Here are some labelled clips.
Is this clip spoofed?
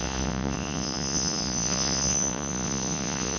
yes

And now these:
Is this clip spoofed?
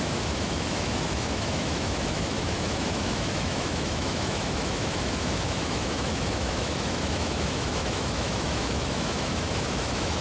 yes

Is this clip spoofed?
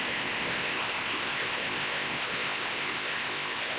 yes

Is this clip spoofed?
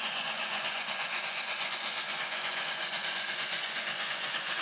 yes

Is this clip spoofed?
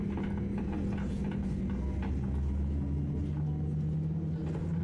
no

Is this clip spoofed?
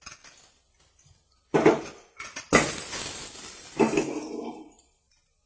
no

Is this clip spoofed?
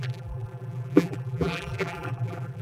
yes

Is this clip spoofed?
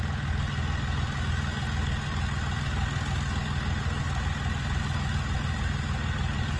no